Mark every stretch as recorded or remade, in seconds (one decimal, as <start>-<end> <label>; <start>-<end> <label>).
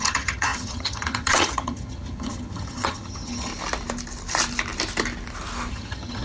0.0-3.5 remade; 3.5-5.7 recorded; 5.7-6.2 remade